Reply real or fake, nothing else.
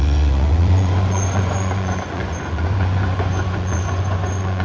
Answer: fake